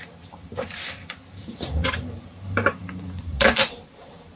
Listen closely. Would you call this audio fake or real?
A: fake